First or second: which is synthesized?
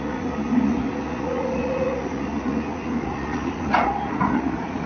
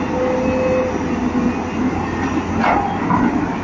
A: first